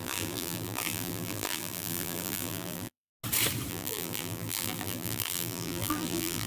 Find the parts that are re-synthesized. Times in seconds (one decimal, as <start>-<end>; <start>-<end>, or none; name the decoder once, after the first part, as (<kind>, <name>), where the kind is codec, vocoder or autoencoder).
0.0-3.1 (vocoder, BigVGAN v2); 3.7-6.5